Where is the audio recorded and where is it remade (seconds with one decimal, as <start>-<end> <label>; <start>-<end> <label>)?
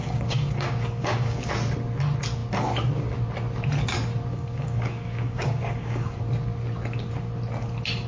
0.0-1.5 remade; 1.5-4.3 recorded; 4.3-6.2 remade; 6.2-8.1 recorded